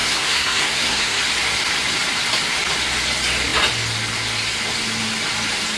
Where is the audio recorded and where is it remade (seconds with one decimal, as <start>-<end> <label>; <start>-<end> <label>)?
0.0-1.2 remade; 1.2-5.8 recorded